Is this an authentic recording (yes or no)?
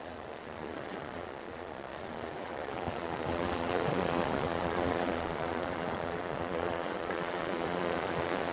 no